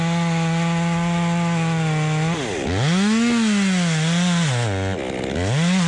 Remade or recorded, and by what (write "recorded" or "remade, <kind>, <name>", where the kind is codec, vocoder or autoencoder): recorded